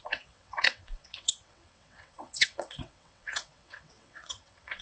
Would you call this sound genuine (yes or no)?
no